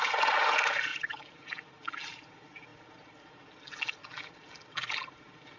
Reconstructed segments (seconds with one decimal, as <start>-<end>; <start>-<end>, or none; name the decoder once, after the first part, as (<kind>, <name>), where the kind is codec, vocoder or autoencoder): none